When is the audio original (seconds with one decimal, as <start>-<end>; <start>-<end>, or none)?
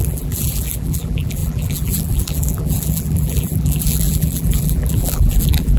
none